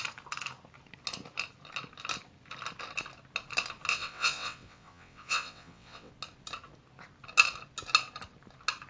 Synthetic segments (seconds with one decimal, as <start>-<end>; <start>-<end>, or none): 3.9-6.1